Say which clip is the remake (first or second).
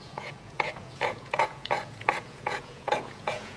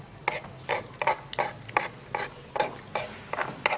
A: first